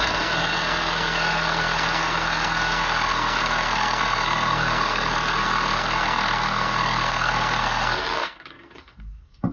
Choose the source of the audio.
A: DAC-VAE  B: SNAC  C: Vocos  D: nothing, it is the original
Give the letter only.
B